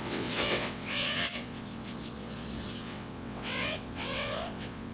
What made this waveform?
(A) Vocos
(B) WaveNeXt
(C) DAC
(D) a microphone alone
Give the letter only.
B